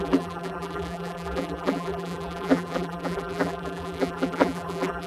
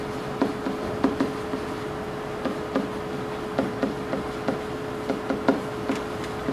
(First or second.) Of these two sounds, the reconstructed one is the first